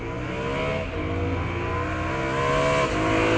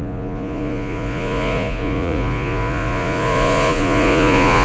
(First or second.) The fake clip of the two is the second